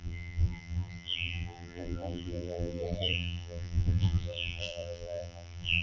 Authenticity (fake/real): fake